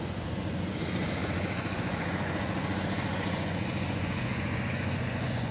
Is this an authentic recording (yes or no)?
no